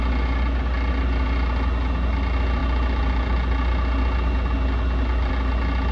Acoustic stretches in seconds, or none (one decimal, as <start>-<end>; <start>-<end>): 0.0-5.9